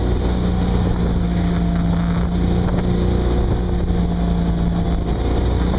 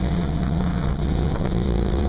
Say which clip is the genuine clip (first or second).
first